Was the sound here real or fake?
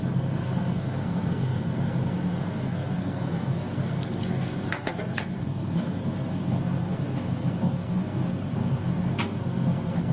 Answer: fake